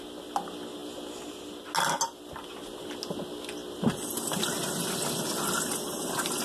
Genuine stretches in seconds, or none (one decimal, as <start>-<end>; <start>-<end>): 0.0-6.4